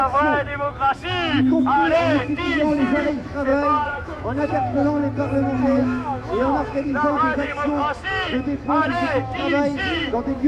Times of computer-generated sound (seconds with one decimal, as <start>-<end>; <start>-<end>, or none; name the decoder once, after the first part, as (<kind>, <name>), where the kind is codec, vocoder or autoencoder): 0.0-5.0 (autoencoder, DAC-VAE); 5.6-10.5